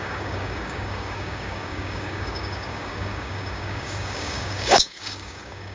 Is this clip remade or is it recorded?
remade